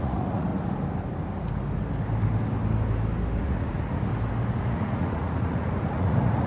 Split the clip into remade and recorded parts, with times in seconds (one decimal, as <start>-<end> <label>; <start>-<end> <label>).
0.0-0.5 remade; 0.5-3.4 recorded; 3.4-4.1 remade; 4.1-4.6 recorded; 4.6-6.5 remade